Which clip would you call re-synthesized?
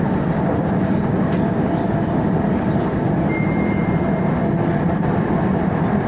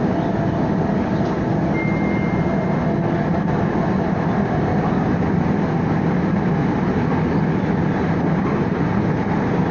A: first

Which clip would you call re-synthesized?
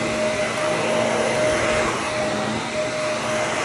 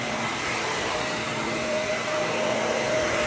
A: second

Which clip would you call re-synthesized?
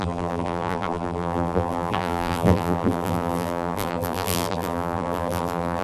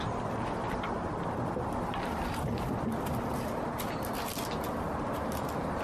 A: first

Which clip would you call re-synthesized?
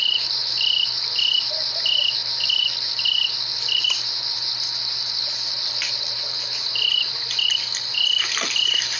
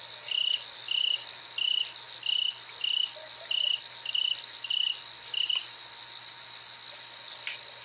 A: first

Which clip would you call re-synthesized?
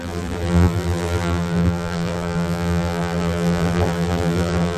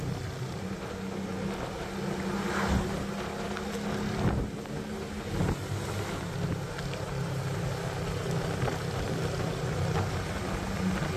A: first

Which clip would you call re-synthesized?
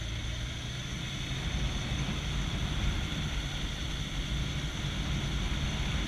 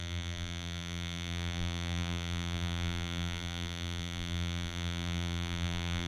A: second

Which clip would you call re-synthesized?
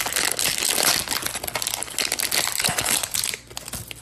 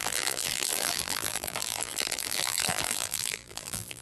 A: second